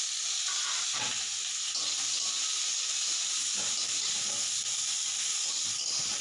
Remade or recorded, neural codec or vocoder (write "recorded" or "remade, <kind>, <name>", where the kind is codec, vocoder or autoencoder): recorded